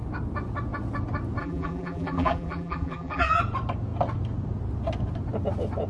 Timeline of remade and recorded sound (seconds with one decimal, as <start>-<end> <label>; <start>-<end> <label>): 0.0-1.4 recorded; 1.4-3.4 remade; 3.4-5.9 recorded